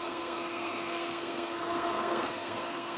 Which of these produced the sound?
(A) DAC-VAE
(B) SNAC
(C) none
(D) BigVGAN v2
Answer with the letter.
B